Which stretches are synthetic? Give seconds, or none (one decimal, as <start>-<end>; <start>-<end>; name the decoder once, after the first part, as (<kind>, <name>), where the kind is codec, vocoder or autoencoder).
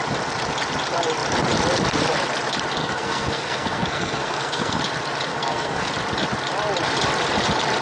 2.8-4.8 (codec, SNAC); 5.3-5.9